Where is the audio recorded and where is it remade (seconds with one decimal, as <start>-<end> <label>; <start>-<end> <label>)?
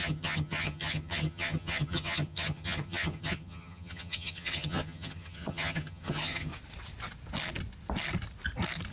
0.0-6.5 remade; 6.5-8.9 recorded